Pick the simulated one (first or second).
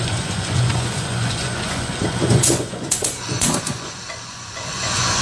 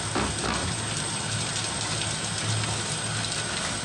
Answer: first